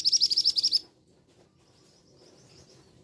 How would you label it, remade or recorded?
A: recorded